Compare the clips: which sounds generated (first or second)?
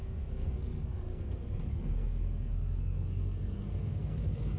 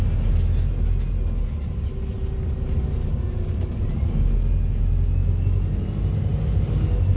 first